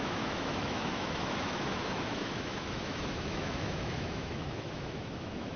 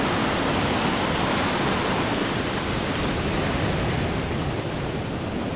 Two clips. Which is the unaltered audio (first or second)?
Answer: second